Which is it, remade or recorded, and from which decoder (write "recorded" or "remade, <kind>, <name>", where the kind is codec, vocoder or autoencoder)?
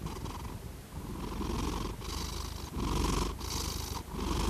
recorded